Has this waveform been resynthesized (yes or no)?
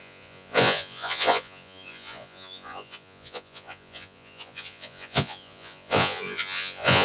yes